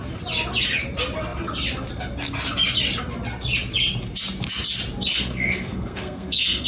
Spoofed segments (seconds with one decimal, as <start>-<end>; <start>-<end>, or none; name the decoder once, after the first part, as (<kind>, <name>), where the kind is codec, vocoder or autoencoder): 5.1-6.7 (codec, SNAC)